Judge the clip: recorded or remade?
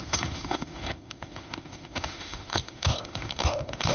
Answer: remade